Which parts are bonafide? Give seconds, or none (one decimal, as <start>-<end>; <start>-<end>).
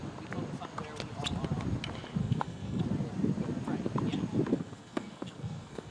0.0-2.2; 2.8-4.5